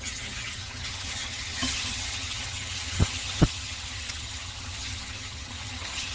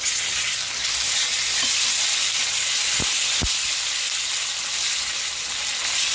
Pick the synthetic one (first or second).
first